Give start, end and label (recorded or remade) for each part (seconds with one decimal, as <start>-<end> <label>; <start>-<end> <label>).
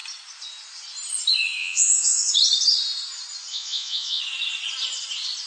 0.0-1.6 recorded; 1.6-2.3 remade; 2.3-3.5 recorded; 3.5-4.2 remade; 4.2-5.5 recorded